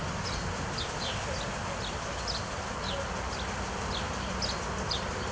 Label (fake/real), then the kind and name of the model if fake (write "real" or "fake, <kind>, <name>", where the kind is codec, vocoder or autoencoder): real